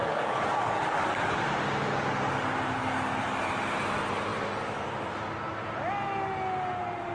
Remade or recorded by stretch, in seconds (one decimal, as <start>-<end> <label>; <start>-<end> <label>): 0.0-1.3 remade; 1.3-2.8 recorded; 2.8-3.5 remade; 3.5-7.1 recorded